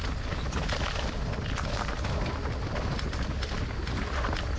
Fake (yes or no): no